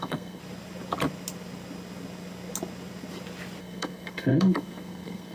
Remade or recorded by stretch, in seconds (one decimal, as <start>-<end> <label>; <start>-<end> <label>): 0.0-0.4 remade; 0.4-3.6 recorded; 3.6-5.3 remade